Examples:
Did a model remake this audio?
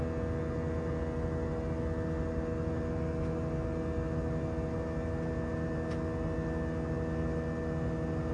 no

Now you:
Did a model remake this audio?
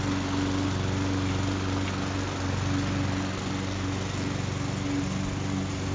no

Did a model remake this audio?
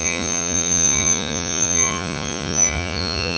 yes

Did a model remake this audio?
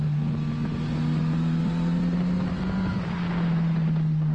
no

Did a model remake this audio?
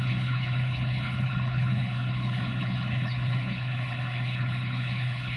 yes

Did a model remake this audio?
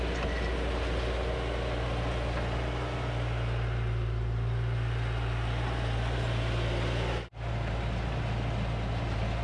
no